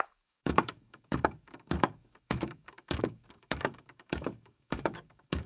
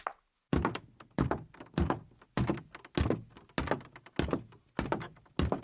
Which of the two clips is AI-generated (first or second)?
first